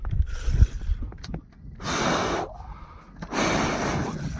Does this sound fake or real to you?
real